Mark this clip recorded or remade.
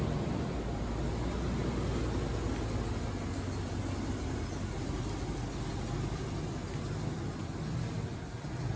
recorded